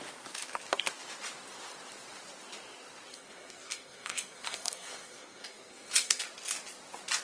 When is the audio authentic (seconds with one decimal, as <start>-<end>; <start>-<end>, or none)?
0.0-3.1; 6.2-7.2